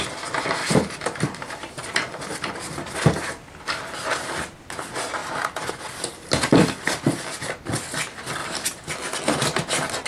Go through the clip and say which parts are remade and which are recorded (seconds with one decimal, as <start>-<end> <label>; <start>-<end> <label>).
0.0-0.6 recorded; 0.6-2.9 remade; 2.9-5.2 recorded; 5.2-5.7 remade; 5.7-8.4 recorded; 8.4-8.9 remade; 8.9-10.1 recorded